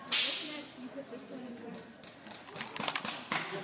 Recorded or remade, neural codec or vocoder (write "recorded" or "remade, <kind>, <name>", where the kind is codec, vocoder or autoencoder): recorded